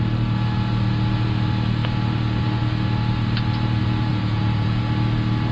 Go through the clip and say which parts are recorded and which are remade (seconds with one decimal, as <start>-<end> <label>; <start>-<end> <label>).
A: 0.0-4.1 recorded; 4.1-4.8 remade; 4.8-5.5 recorded